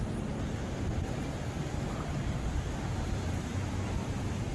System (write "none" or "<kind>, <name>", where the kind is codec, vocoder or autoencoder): none